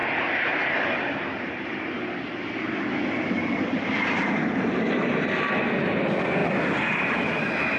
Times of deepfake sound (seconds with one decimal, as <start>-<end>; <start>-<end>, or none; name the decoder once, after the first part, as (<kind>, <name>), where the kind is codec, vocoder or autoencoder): 0.0-0.5 (vocoder, BigVGAN v2); 3.4-4.7; 6.4-7.0